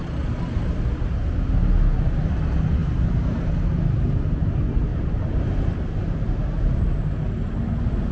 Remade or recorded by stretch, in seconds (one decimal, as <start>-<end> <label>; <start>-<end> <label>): 0.0-2.8 recorded; 2.8-4.4 remade; 4.4-4.9 recorded; 4.9-6.8 remade; 6.8-8.1 recorded